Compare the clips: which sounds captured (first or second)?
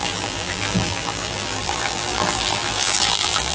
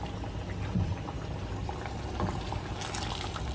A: second